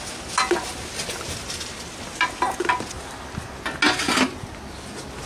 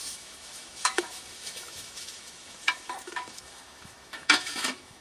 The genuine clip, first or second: first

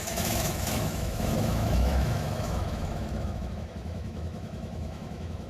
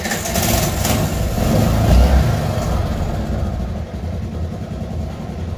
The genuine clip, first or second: second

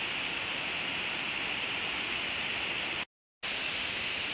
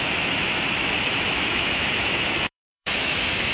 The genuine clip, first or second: first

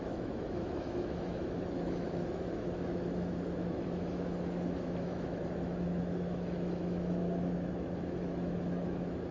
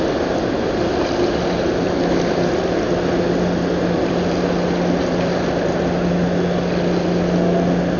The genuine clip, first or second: second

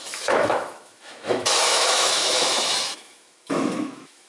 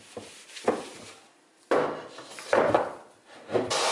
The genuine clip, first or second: second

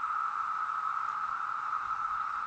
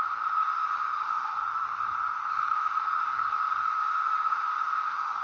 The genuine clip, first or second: first